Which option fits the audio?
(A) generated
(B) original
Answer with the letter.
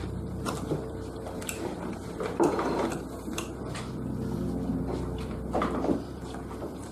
A